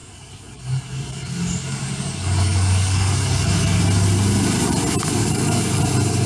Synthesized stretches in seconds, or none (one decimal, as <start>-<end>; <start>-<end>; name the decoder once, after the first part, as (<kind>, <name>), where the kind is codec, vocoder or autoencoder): 0.0-3.8 (codec, DAC); 5.2-5.8